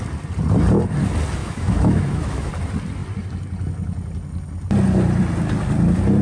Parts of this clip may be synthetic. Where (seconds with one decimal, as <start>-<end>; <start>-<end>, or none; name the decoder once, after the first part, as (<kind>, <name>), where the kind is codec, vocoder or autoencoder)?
1.4-2.5 (autoencoder, DAC-VAE)

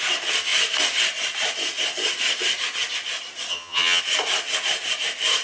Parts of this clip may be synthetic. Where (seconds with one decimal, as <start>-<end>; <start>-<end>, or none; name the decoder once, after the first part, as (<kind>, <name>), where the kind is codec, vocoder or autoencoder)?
3.5-4.0 (vocoder, HiFi-GAN)

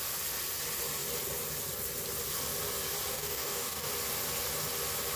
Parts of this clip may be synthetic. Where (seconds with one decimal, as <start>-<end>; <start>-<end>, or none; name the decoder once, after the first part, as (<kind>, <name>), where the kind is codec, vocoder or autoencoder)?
3.1-3.9 (codec, DAC)

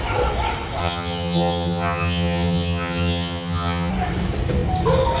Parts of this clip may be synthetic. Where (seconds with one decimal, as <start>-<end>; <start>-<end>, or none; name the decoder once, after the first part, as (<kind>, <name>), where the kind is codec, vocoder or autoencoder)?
0.8-3.9 (vocoder, HiFi-GAN)